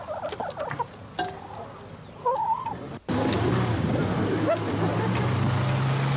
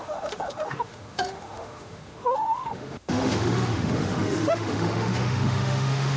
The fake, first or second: second